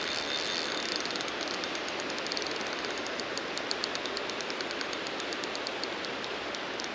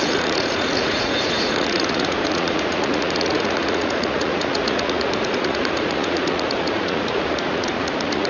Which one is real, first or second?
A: first